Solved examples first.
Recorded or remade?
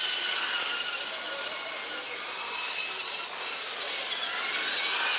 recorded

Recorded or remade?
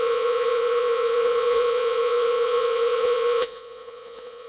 remade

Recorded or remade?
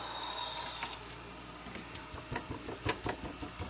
recorded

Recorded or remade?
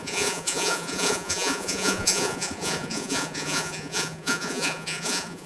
remade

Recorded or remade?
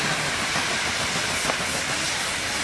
remade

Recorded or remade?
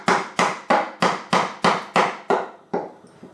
recorded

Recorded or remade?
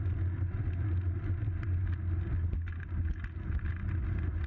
recorded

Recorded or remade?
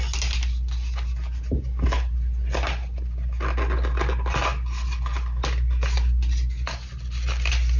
recorded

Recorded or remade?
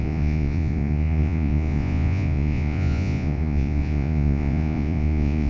remade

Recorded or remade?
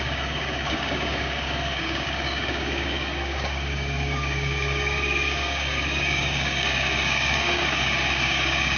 remade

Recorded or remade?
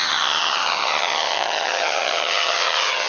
remade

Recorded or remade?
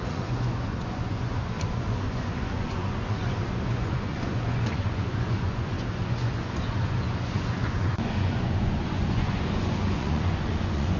remade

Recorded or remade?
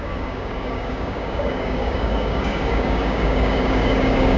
remade